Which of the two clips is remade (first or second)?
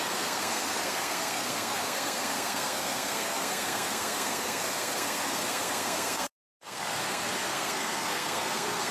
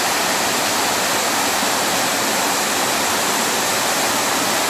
first